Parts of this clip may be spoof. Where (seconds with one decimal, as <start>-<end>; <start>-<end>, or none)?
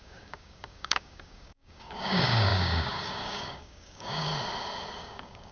0.0-4.3; 5.0-5.5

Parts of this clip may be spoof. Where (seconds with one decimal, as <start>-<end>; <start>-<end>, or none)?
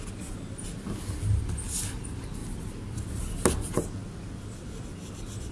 none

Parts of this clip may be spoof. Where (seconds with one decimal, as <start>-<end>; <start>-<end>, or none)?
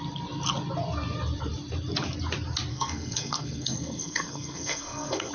2.7-5.3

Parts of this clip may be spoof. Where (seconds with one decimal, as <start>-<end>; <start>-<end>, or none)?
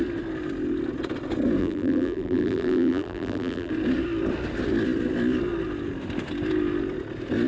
1.6-3.7